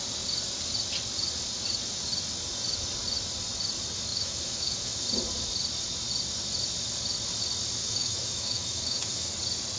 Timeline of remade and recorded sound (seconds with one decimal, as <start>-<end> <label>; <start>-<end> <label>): 0.0-4.1 recorded; 4.1-5.0 remade; 5.0-7.8 recorded; 7.8-9.3 remade; 9.3-9.8 recorded